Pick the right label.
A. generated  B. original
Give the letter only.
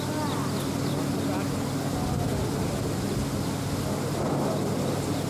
B